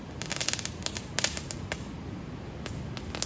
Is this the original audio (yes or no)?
yes